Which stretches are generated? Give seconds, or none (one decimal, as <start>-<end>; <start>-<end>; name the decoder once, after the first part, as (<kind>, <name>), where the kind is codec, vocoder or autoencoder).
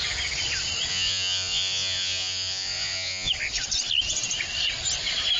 0.9-3.3 (vocoder, Vocos)